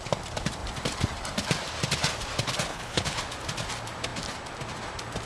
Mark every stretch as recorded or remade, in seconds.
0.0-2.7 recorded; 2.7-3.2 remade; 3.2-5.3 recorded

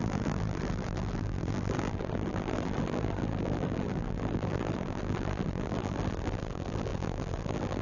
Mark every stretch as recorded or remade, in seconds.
0.0-7.8 remade

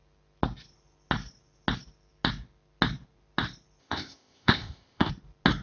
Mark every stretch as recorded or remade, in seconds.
0.0-3.8 recorded; 3.8-5.1 remade; 5.1-5.6 recorded

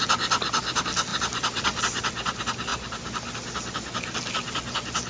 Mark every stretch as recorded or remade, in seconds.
0.0-5.1 recorded

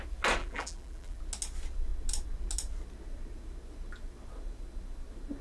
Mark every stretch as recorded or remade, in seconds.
0.0-0.4 recorded; 0.4-1.2 remade; 1.2-5.4 recorded